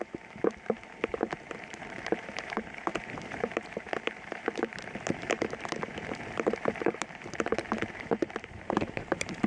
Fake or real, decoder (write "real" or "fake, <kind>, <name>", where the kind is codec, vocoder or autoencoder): fake, vocoder, BigVGAN v2